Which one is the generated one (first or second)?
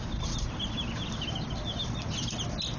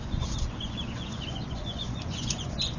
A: second